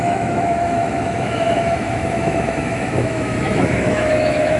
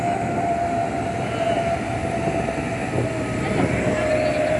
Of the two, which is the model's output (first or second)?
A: first